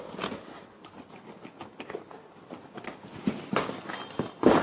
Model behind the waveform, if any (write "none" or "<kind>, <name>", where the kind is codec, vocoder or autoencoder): none